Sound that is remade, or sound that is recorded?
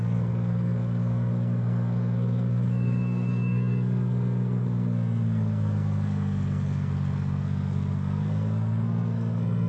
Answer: remade